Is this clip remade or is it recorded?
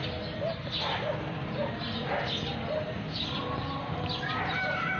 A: recorded